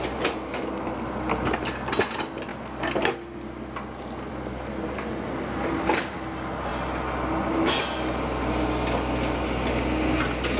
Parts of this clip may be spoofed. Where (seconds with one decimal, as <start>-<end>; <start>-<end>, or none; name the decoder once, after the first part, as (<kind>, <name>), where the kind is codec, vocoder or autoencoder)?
none